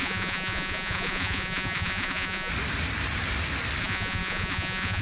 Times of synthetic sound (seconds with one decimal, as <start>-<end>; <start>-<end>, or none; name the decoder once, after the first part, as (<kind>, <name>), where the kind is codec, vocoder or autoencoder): 0.0-2.5 (vocoder, Vocos); 3.8-5.0